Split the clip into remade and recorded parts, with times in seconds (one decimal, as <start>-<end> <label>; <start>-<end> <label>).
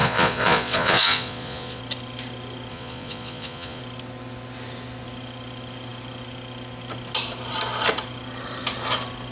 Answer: 0.0-1.8 remade; 1.8-2.7 recorded; 2.7-3.8 remade; 3.8-9.3 recorded